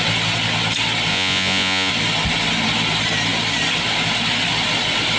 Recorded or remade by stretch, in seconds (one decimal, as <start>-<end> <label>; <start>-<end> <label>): 0.0-1.1 recorded; 1.1-1.9 remade; 1.9-5.2 recorded